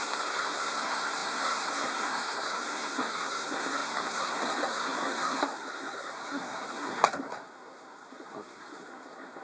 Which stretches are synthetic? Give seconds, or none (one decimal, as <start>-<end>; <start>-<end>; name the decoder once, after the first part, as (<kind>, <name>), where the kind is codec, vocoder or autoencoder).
0.0-9.4 (codec, SNAC)